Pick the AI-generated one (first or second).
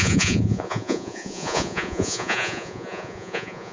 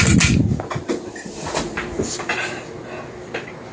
first